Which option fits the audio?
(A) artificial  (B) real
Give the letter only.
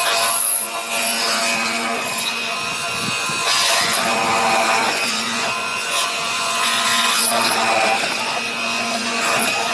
A